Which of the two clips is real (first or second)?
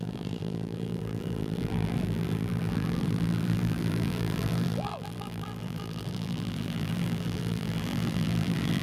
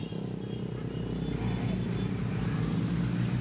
second